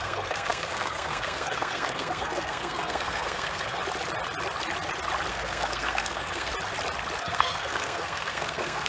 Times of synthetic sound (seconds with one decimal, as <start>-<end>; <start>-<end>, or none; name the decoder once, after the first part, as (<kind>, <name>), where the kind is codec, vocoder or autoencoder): 0.0-3.8 (codec, SNAC); 5.3-6.5; 7.2-8.9